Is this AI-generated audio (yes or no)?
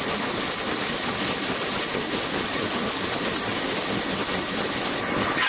no